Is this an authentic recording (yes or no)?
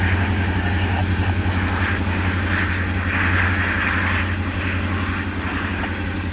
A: yes